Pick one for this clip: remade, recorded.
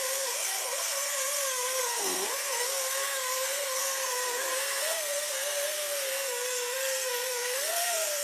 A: remade